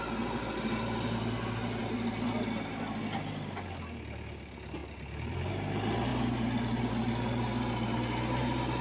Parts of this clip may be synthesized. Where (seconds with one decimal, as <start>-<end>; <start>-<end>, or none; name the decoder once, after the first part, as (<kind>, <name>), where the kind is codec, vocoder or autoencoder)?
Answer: 4.8-5.5 (vocoder, BigVGAN v2); 6.1-6.9